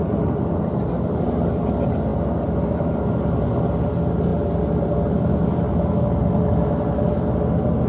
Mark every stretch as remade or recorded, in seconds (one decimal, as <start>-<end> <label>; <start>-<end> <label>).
0.0-7.9 recorded